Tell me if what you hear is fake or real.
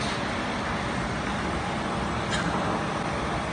real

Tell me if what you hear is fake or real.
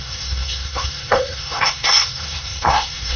fake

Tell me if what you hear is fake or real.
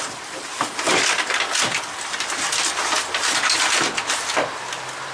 real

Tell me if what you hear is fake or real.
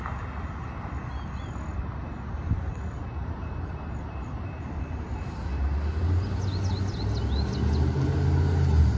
real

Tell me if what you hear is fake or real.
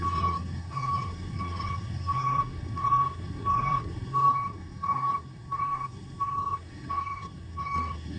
fake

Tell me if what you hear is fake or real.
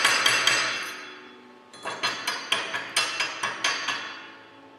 real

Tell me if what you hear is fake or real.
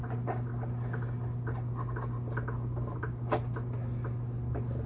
real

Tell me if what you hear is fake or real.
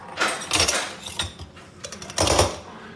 real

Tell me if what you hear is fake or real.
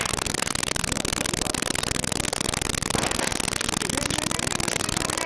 real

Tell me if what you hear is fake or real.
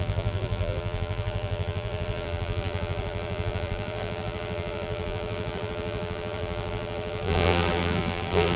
fake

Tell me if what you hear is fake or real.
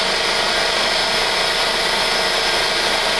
real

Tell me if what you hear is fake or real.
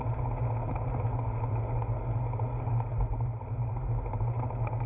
real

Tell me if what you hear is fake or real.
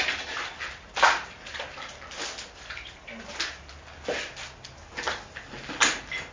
real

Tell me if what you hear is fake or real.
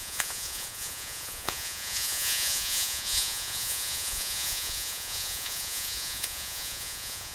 fake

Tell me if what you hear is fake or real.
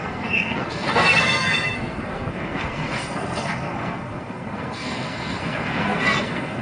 fake